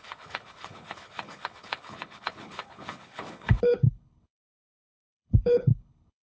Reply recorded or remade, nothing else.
remade